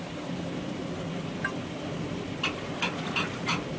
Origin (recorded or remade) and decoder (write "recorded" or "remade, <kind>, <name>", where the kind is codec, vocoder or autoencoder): recorded